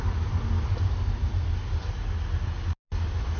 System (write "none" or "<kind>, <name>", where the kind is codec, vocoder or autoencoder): none